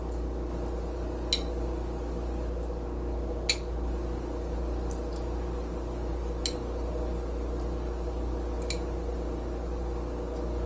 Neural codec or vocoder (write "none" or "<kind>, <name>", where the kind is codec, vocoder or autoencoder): none